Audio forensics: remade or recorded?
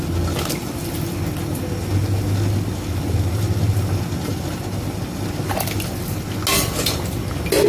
recorded